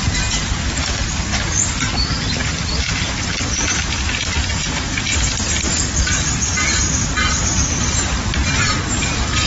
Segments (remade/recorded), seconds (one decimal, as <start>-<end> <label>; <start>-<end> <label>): 0.0-9.5 recorded

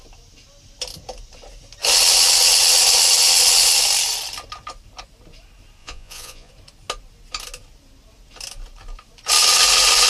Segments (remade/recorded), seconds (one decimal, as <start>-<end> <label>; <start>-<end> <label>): 0.0-5.8 recorded; 5.8-6.5 remade; 6.5-10.1 recorded

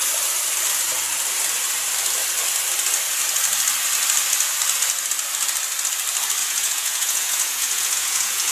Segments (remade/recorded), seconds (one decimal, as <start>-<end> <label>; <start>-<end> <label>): 0.0-6.4 recorded; 6.4-8.5 remade

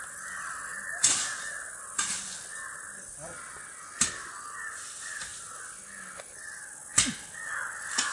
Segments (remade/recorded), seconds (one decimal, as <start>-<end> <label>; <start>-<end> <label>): 0.0-8.1 recorded

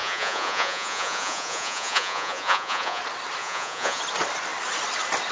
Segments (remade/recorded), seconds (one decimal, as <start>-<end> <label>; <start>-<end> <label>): 0.0-3.0 remade; 3.0-3.4 recorded; 3.4-4.0 remade; 4.0-5.3 recorded

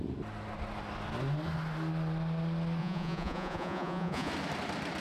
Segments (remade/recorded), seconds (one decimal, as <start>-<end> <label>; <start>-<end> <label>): 0.0-2.8 recorded; 2.8-4.3 remade; 4.3-5.0 recorded

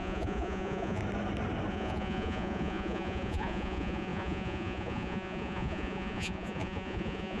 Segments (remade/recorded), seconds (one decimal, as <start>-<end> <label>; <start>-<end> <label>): 0.0-1.0 remade; 1.0-1.7 recorded; 1.7-7.4 remade